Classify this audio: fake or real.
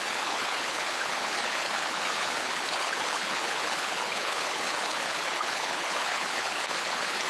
fake